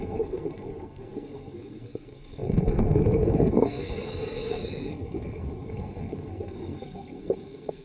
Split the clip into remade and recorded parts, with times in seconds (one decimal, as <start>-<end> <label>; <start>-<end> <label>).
0.0-7.8 remade